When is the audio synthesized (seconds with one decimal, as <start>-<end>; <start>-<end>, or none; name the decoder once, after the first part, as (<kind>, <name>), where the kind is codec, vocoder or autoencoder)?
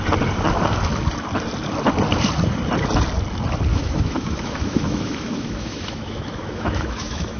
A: 3.7-7.4 (autoencoder, DAC-VAE)